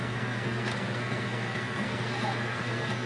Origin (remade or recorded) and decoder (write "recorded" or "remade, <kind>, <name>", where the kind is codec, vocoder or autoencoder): remade, codec, SNAC